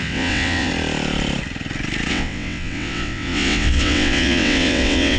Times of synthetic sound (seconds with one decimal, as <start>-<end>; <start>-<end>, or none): 0.0-0.7; 2.1-5.2